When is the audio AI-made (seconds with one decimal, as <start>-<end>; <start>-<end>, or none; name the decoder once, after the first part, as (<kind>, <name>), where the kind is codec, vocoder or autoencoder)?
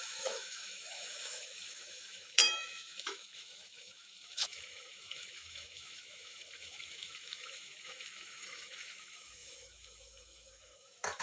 0.0-11.2 (autoencoder, DAC-VAE)